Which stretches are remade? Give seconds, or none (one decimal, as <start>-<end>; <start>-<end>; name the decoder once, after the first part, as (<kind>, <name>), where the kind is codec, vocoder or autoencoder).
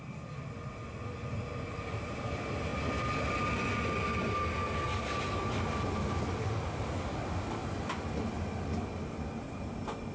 none